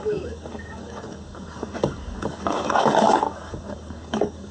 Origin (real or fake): fake